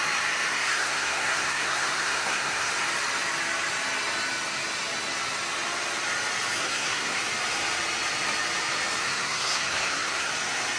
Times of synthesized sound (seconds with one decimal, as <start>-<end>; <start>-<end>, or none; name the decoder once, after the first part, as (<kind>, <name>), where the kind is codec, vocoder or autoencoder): 0.5-2.7 (codec, SNAC); 6.6-7.2; 9.0-10.3